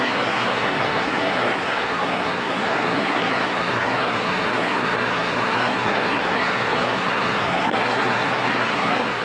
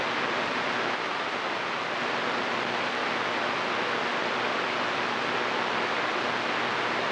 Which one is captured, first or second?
second